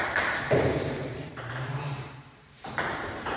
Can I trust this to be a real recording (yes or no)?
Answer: no